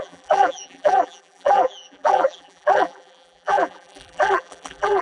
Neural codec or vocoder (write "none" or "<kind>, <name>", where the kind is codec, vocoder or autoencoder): vocoder, BigVGAN v2